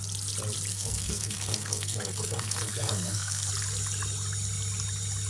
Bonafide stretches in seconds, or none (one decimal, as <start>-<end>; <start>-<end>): 0.0-0.7; 3.5-5.3